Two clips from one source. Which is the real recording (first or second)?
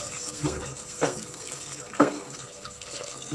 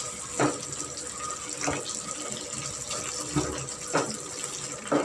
second